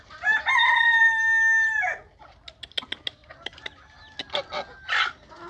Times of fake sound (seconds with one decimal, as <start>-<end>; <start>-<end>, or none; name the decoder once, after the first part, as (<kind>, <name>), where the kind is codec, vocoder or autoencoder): none